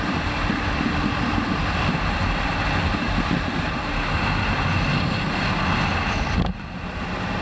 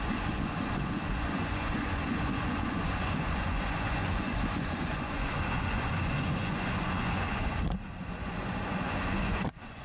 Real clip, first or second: first